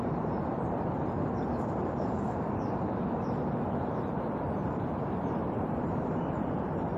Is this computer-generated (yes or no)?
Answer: yes